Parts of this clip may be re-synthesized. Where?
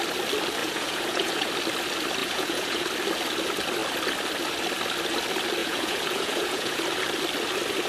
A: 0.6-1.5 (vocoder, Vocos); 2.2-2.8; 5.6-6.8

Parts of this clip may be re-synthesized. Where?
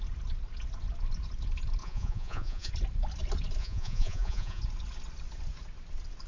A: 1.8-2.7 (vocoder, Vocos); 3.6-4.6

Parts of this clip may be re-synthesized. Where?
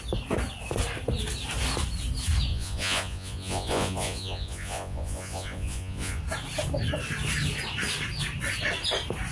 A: 2.5-6.2 (vocoder, Vocos)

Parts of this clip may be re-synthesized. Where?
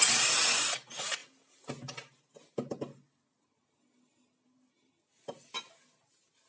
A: none